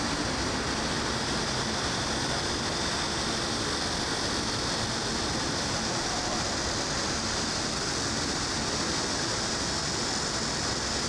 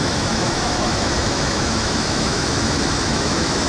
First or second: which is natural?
first